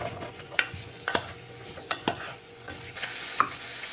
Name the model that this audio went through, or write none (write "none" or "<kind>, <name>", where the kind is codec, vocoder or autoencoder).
vocoder, Vocos